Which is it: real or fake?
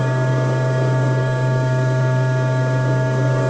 fake